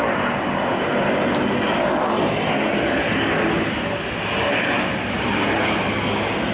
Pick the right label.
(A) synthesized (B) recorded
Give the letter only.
B